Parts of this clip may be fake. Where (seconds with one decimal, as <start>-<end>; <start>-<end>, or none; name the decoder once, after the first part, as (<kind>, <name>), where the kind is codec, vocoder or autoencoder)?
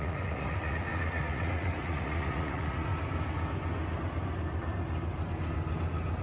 0.0-2.9 (vocoder, Vocos)